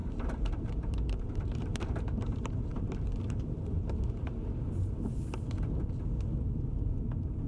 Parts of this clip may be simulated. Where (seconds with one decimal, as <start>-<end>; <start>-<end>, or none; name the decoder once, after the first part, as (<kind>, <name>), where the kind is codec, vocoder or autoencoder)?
0.0-4.5 (vocoder, BigVGAN v2)